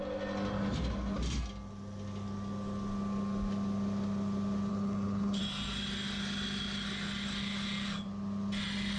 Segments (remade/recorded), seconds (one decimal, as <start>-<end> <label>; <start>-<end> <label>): 0.0-4.7 recorded; 4.7-5.4 remade; 5.4-9.0 recorded